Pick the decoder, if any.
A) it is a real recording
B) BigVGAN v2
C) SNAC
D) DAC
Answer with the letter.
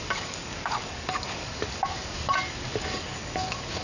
D